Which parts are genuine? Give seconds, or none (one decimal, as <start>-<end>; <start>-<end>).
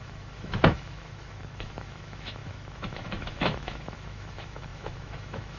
none